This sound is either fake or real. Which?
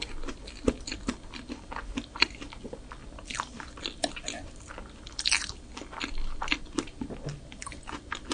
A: real